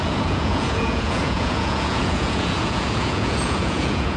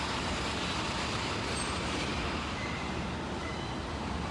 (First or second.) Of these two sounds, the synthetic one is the first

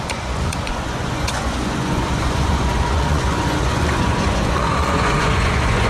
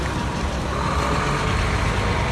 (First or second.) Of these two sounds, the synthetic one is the first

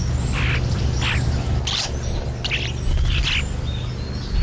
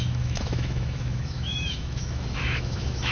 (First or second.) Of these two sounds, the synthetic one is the second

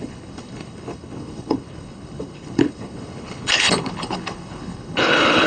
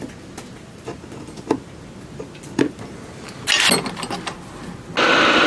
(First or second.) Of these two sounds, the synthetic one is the first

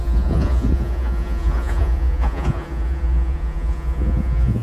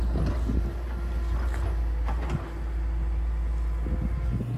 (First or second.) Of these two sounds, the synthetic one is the first